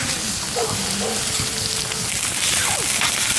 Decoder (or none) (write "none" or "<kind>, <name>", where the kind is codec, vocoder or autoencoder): none